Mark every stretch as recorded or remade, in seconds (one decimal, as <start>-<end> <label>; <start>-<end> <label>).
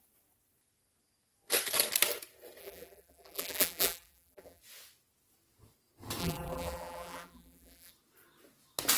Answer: 0.0-2.6 recorded; 2.6-4.6 remade; 4.6-6.2 recorded; 6.2-7.9 remade; 7.9-9.0 recorded